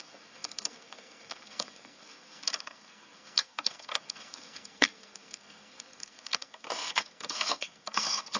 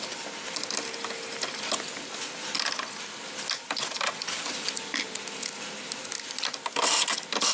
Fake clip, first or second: first